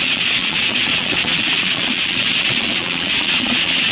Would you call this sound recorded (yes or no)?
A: no